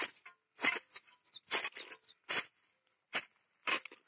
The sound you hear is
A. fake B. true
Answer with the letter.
B